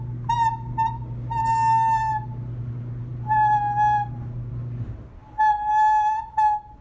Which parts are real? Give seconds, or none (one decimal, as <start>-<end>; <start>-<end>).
0.0-1.4; 2.1-6.8